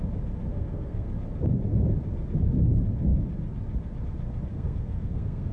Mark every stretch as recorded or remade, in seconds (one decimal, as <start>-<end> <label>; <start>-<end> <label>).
0.0-0.5 recorded; 0.5-1.1 remade; 1.1-4.5 recorded; 4.5-5.5 remade